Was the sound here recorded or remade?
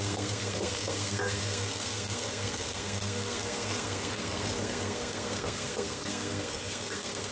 remade